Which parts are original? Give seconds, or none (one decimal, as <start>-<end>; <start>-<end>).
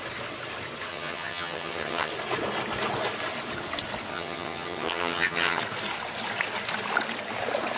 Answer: 0.0-0.9; 2.1-4.1; 5.6-7.8